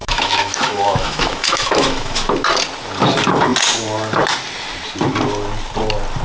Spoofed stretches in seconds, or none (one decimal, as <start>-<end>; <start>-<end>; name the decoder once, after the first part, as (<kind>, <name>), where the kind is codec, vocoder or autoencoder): 0.0-2.3 (autoencoder, DAC-VAE)

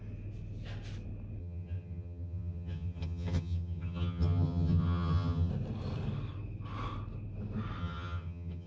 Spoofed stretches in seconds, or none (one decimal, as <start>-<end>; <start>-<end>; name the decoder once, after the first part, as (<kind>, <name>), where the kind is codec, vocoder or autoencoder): 1.4-5.5 (vocoder, HiFi-GAN); 7.8-8.7

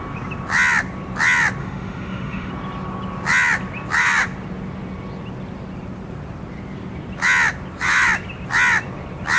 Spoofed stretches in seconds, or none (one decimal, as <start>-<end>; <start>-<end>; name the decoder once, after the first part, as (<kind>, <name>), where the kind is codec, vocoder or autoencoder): 1.6-2.5 (autoencoder, DAC-VAE)

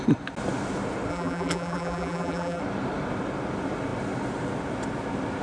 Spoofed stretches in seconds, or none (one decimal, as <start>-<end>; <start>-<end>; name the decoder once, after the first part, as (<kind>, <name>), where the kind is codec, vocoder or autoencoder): 1.1-2.6 (vocoder, BigVGAN v2)

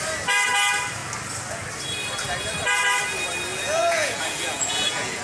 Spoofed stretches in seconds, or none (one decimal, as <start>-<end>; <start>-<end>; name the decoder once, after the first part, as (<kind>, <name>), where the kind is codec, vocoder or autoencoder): 3.5-5.2 (vocoder, Vocos)

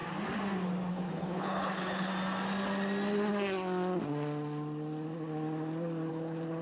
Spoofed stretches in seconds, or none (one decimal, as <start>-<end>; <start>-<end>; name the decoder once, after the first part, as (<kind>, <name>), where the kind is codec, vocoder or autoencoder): 0.9-2.1 (codec, HILCodec); 6.1-6.6